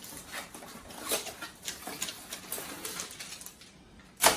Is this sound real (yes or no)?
yes